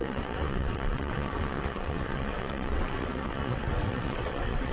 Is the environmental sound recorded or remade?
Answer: remade